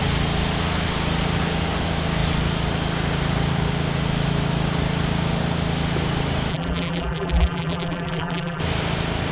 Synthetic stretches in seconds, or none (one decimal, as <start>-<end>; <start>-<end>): 6.5-8.6

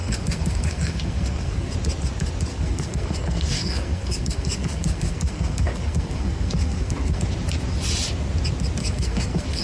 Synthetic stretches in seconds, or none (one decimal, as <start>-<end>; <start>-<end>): 0.0-1.7; 2.5-7.2; 8.8-9.6